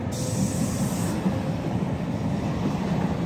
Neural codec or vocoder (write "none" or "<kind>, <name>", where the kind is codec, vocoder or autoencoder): none